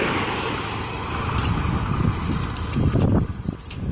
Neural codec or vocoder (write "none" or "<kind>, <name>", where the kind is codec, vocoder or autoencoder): vocoder, BigVGAN v2